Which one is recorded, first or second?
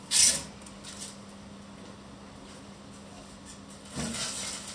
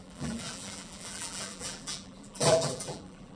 first